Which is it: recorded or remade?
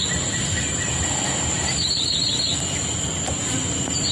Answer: recorded